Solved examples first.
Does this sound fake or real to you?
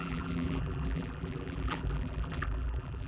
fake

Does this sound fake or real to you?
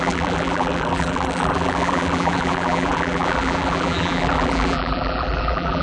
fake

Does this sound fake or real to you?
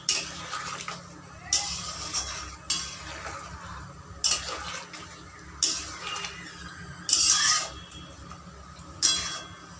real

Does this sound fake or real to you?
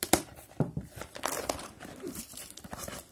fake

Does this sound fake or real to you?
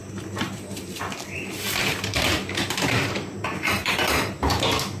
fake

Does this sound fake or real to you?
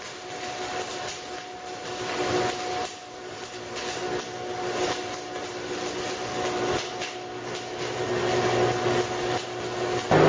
real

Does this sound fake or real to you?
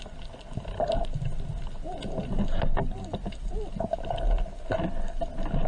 real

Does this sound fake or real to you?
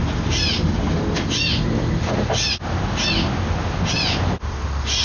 real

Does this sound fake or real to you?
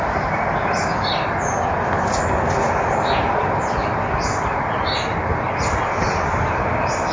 real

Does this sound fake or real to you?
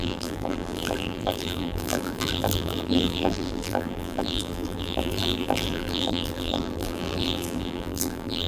fake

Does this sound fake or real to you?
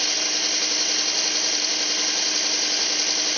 real